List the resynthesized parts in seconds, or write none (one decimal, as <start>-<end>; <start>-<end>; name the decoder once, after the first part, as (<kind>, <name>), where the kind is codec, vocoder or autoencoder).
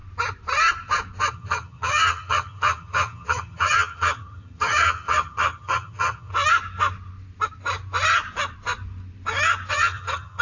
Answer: 1.3-6.3 (vocoder, HiFi-GAN); 9.7-10.4